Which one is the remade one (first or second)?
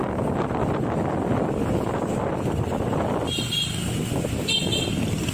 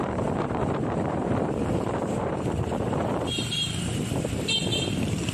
second